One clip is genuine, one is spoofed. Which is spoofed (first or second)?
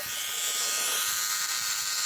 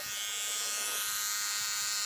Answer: first